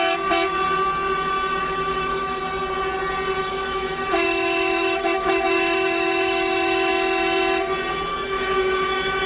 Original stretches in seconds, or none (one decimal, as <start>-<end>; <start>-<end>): 0.0-1.6; 2.4-3.4; 6.9-8.1